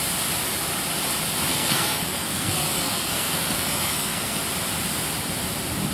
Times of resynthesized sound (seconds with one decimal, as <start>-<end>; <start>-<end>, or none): 1.5-4.4